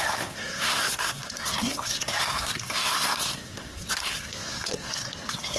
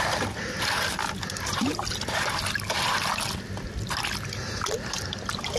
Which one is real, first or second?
second